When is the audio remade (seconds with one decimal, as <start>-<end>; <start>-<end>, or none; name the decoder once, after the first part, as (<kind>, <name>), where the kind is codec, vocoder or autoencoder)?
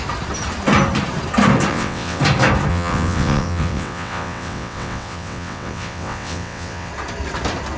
1.7-2.2 (vocoder, WaveNeXt); 2.7-6.9